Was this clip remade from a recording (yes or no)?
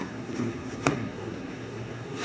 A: yes